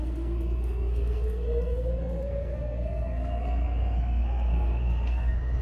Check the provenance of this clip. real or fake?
fake